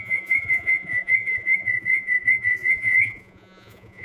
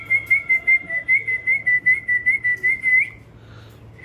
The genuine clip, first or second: second